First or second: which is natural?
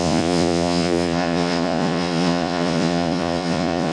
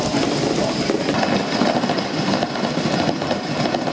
second